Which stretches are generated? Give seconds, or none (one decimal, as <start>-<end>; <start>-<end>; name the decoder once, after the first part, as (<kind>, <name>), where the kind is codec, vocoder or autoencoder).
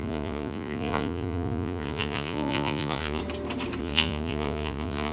0.0-3.2 (vocoder, Vocos); 3.8-5.1